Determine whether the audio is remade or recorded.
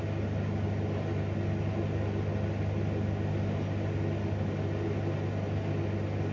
recorded